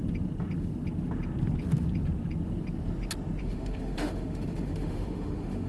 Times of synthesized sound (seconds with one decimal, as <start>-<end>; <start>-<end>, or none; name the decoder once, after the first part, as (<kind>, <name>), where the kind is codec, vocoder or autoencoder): 3.4-5.7 (autoencoder, DAC-VAE)